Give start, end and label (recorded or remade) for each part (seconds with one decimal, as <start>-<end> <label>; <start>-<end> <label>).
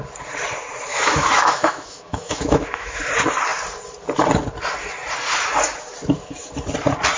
0.0-0.9 recorded; 0.9-3.0 remade; 3.0-7.2 recorded